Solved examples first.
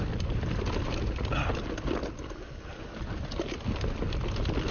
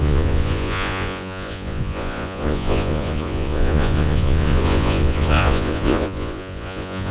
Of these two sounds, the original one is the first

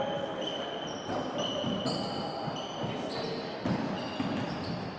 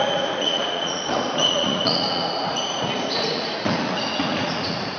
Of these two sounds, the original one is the first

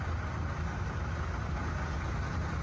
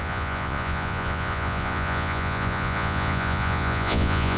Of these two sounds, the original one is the first